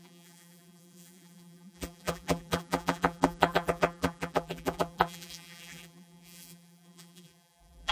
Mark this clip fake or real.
fake